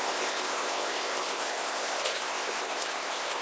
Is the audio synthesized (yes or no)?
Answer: yes